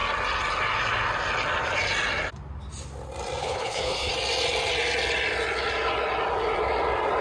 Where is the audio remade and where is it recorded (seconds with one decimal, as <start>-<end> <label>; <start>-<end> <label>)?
0.0-3.4 recorded; 3.4-4.1 remade; 4.1-7.2 recorded